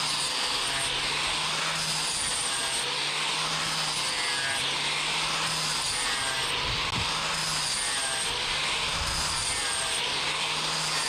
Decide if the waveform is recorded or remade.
recorded